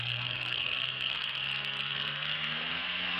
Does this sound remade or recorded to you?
remade